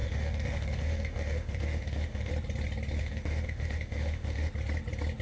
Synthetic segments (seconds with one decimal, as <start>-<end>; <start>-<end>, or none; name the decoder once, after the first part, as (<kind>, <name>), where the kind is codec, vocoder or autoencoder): 0.0-2.3 (autoencoder, DAC-VAE); 3.0-4.5